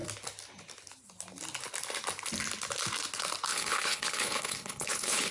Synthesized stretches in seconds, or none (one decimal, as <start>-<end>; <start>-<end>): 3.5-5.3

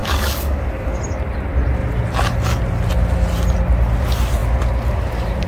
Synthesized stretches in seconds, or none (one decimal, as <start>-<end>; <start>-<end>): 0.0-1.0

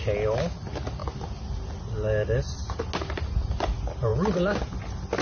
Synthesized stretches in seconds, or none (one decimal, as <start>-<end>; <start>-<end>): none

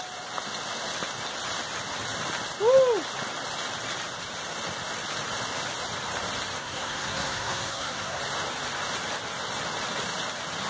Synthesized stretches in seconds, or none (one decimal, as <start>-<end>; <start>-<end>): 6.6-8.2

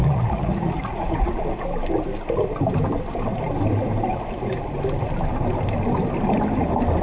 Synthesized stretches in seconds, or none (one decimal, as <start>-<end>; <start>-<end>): 0.0-1.4

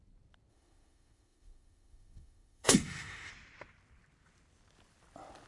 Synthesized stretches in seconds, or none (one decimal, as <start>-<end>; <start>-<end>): 0.5-3.3

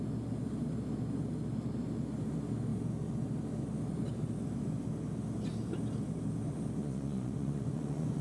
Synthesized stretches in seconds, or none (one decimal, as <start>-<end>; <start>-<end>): 6.8-8.2